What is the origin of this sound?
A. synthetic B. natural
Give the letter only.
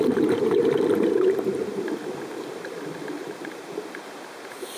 A